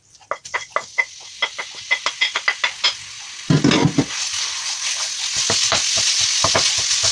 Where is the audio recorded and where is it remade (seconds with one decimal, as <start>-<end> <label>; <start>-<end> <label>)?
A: 0.0-7.1 recorded